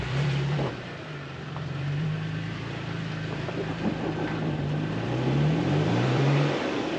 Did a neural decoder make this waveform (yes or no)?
yes